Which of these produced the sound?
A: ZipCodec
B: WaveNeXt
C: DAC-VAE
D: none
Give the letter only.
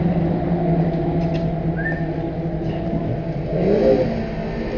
D